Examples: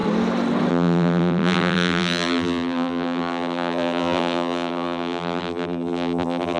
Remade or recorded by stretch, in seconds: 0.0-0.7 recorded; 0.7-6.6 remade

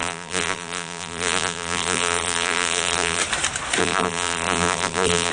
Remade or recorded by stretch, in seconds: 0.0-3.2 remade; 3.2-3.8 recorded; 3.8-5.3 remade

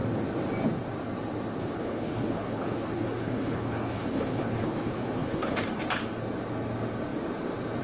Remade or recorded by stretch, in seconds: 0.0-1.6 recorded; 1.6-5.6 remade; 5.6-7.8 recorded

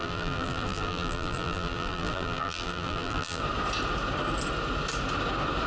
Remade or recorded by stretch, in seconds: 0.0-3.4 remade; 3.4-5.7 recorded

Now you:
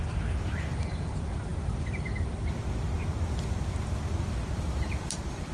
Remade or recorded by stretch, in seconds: 0.0-5.5 recorded

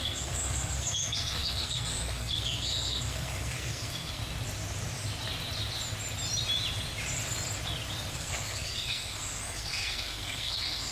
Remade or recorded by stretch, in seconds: 0.0-4.2 remade; 4.2-8.1 recorded; 8.1-10.9 remade

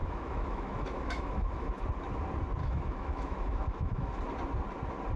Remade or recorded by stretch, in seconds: 0.0-1.8 remade; 1.8-2.6 recorded; 2.6-4.2 remade; 4.2-5.2 recorded

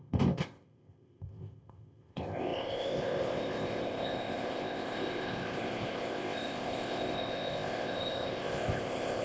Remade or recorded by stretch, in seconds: 0.0-9.2 remade